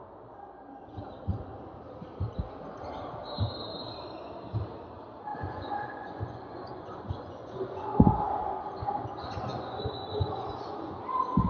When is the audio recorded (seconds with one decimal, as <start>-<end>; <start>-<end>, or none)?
0.0-5.3; 8.2-9.5; 11.0-11.5